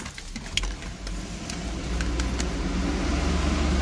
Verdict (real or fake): real